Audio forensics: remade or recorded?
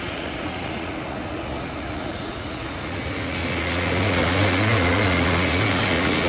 remade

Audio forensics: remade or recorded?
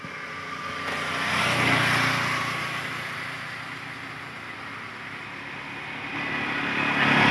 recorded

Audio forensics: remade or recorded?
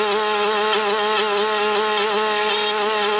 recorded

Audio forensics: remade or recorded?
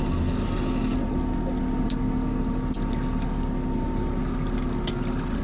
recorded